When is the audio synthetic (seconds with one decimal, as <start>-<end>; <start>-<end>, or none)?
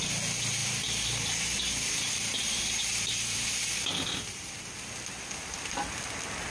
0.6-4.5